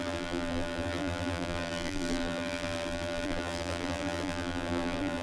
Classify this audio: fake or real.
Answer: fake